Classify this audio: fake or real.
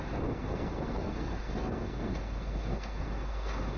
fake